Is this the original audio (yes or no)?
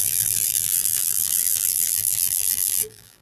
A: no